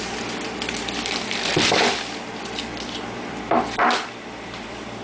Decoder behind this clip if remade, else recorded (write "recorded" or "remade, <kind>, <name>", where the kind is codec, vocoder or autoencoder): remade, vocoder, BigVGAN v2